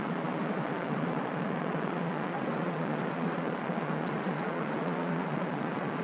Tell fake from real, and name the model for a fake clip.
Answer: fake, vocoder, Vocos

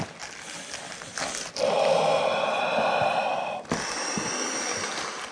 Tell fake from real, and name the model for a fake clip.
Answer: real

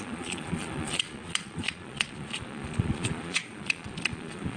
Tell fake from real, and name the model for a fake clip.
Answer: fake, vocoder, Vocos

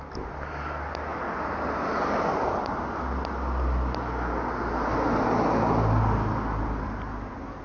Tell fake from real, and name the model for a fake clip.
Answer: real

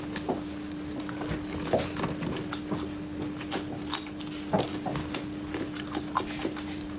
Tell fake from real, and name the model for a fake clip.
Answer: real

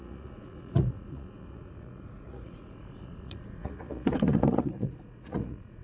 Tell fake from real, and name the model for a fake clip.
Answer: fake, vocoder, Vocos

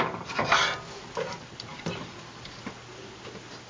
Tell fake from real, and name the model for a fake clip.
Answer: real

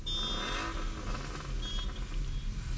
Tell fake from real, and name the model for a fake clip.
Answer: real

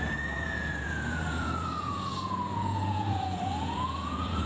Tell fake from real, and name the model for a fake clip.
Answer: fake, vocoder, Vocos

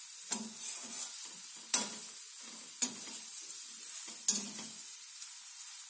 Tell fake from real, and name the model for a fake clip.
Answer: real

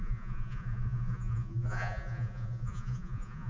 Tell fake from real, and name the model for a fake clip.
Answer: fake, vocoder, Vocos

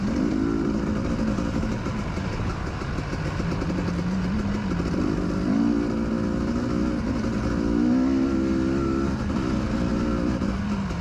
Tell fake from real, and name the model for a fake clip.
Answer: real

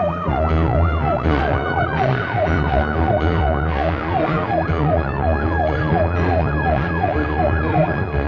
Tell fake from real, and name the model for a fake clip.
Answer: fake, vocoder, Vocos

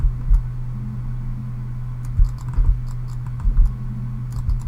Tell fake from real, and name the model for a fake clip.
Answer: real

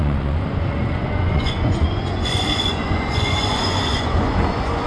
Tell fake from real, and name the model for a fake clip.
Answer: fake, vocoder, Vocos